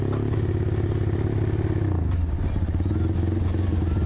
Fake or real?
real